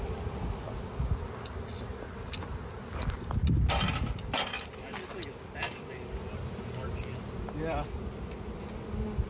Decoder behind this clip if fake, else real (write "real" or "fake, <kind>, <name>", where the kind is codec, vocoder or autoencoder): real